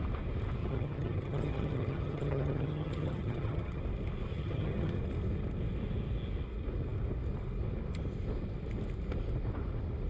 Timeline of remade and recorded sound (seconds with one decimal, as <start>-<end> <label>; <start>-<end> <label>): 0.0-0.6 recorded; 0.6-3.8 remade; 3.8-4.3 recorded; 4.3-5.0 remade; 5.0-10.1 recorded

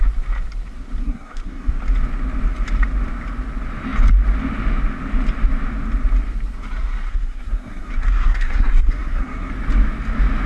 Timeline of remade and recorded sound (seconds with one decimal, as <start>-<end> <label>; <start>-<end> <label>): 0.0-1.0 recorded; 1.0-1.7 remade; 1.7-7.1 recorded; 7.1-9.5 remade; 9.5-10.5 recorded

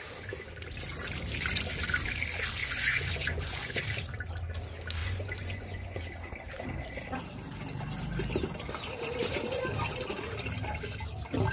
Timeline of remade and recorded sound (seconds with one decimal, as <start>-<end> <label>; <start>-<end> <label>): 0.0-2.6 recorded; 2.6-3.8 remade; 3.8-5.0 recorded; 5.0-6.0 remade; 6.0-11.5 recorded

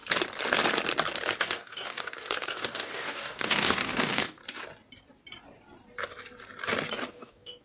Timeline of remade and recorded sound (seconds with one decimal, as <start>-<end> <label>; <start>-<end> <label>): 0.0-1.4 recorded; 1.4-4.4 remade; 4.4-7.1 recorded; 7.1-7.6 remade

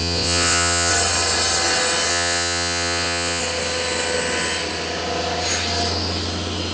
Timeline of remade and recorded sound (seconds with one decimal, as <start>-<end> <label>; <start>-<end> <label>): 0.0-0.9 remade; 0.9-2.1 recorded; 2.1-3.4 remade; 3.4-6.7 recorded

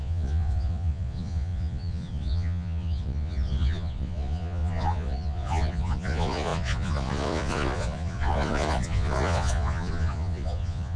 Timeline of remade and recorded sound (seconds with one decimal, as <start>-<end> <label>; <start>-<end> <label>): 0.0-11.0 remade

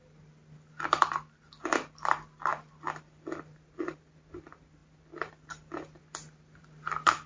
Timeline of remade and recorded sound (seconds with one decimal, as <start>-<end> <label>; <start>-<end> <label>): 0.0-4.8 remade; 4.8-6.0 recorded; 6.0-7.3 remade

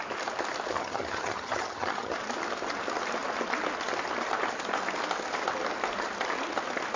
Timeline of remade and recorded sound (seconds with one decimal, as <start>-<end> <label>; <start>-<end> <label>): 0.0-0.7 recorded; 0.7-2.2 remade; 2.2-7.0 recorded